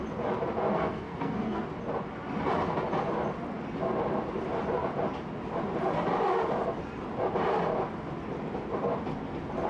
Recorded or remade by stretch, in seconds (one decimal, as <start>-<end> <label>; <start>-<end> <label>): 0.0-0.7 recorded; 0.7-1.6 remade; 1.6-9.7 recorded